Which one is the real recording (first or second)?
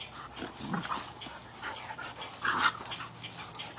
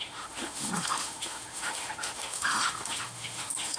first